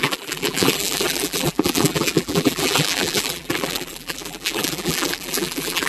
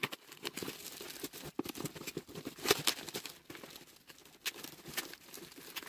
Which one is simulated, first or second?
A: first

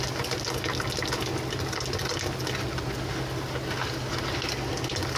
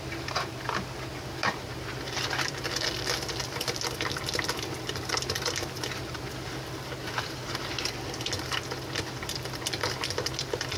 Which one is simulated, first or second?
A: second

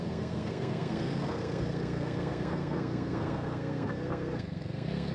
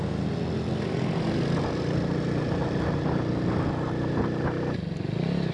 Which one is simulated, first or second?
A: first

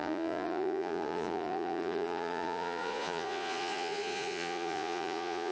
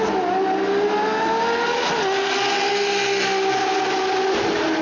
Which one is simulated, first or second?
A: first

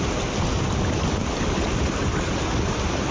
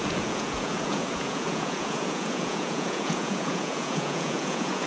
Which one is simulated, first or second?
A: second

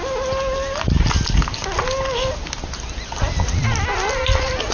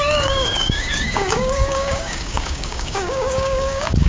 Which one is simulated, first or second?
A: second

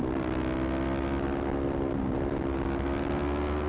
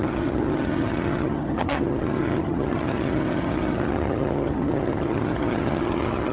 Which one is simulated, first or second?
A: second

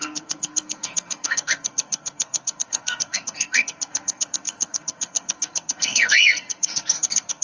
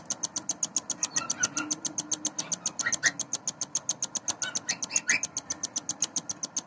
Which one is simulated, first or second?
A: first